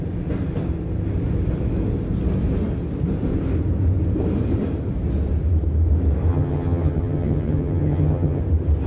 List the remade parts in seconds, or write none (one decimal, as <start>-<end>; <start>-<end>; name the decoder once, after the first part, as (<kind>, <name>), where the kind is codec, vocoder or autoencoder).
6.3-8.4 (vocoder, HiFi-GAN)